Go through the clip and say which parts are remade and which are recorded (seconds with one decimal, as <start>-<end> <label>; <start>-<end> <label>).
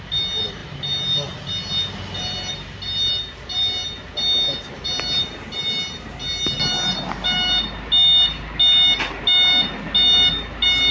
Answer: 0.0-10.9 recorded